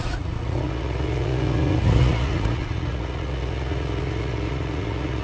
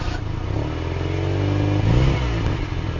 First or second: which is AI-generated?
first